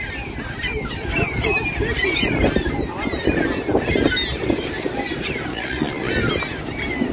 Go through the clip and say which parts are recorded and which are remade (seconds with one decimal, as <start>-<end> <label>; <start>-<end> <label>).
0.0-5.5 recorded; 5.5-6.1 remade; 6.1-7.1 recorded